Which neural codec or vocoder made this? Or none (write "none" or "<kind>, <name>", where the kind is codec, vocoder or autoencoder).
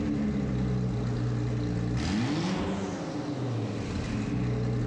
none